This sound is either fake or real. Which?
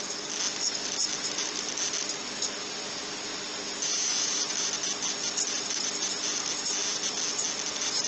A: real